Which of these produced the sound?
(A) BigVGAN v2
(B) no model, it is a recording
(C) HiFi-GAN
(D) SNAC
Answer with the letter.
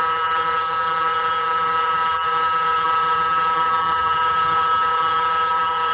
C